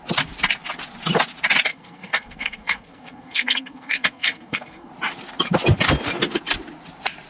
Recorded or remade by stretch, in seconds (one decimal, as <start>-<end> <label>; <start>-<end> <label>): 0.0-1.7 recorded; 1.7-4.9 remade; 4.9-7.3 recorded